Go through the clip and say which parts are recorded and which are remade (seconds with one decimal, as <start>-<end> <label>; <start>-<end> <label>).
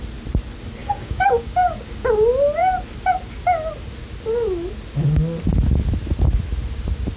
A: 0.0-0.8 recorded; 0.8-2.1 remade; 2.1-7.2 recorded